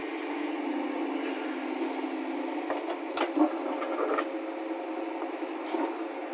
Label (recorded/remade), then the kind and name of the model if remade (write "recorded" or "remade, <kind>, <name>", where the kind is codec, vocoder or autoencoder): recorded